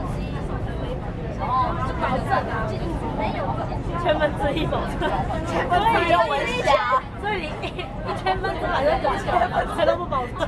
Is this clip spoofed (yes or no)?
no